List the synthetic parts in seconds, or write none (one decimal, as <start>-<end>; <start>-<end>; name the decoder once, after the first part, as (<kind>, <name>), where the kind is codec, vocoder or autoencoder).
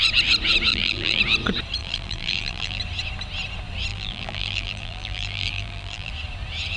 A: 0.7-1.2 (vocoder, BigVGAN v2); 1.8-2.8; 3.9-6.1